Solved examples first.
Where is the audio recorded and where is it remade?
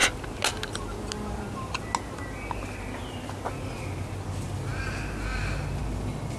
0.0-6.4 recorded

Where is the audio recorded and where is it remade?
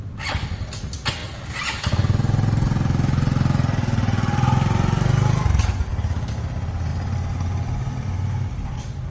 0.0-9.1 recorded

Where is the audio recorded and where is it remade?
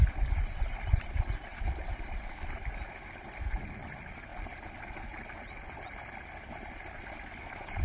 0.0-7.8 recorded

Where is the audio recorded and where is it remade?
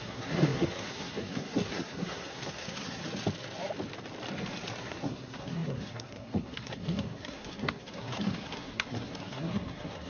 0.0-3.0 remade; 3.0-4.8 recorded; 4.8-10.1 remade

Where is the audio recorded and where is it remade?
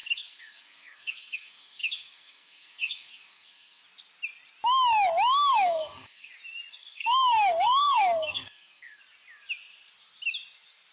0.0-3.8 remade; 3.8-5.5 recorded; 5.5-6.3 remade; 6.3-6.7 recorded; 6.7-9.0 remade; 9.0-10.9 recorded